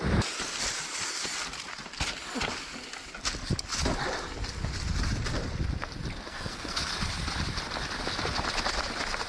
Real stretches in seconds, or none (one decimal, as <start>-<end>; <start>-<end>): 0.0-6.3; 6.9-9.3